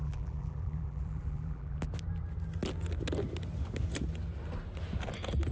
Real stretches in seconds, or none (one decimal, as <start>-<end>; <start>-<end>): 1.9-5.5